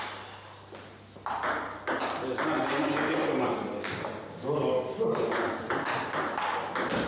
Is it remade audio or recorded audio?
recorded